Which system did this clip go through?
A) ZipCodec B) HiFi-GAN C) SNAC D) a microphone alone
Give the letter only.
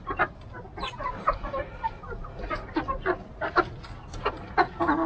D